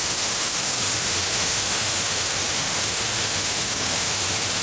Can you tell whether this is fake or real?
fake